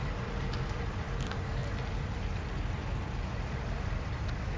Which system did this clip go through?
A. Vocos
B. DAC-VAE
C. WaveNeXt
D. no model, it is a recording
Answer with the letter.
D